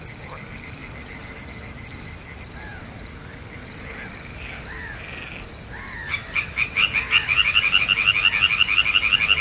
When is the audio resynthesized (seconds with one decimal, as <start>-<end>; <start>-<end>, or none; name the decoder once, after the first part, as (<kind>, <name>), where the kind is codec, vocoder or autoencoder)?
0.8-1.4 (vocoder, BigVGAN v2); 2.7-7.8